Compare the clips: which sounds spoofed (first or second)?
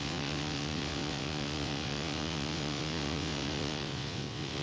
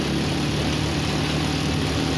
first